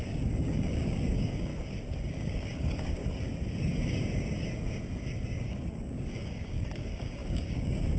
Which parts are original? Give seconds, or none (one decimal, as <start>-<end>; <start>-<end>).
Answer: 1.5-2.1; 3.0-5.4